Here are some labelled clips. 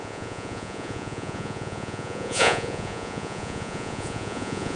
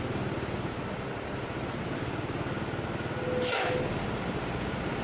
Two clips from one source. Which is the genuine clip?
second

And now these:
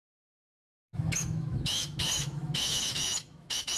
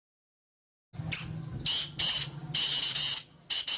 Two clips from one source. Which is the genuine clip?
second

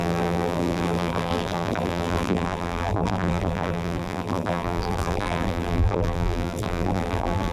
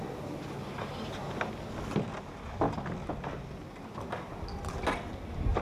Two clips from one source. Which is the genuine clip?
second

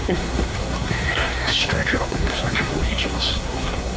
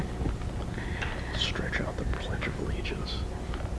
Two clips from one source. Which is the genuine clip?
second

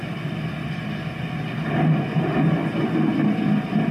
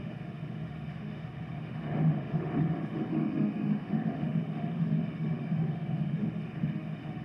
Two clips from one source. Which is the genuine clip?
first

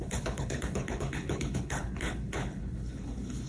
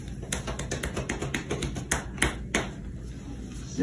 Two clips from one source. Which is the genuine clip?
second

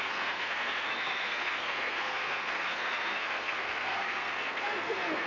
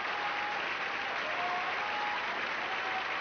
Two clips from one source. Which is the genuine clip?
second